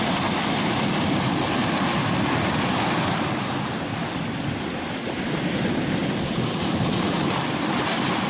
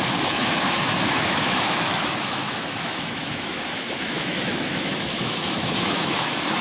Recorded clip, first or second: first